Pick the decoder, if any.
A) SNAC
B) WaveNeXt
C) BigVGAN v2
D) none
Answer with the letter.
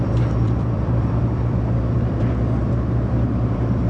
C